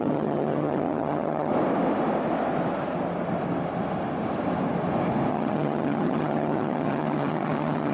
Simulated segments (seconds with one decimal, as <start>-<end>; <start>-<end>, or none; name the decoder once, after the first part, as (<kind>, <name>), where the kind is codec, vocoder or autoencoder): 0.0-1.5 (vocoder, HiFi-GAN); 5.3-7.9